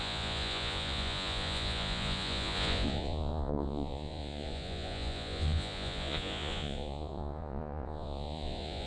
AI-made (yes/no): yes